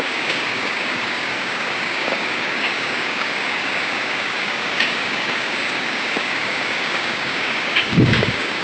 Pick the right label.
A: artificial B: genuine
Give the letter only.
A